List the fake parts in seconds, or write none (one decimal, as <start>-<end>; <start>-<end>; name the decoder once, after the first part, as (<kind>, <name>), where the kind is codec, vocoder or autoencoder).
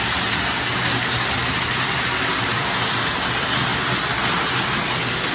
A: none